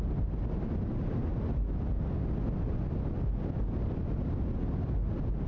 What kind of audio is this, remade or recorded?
recorded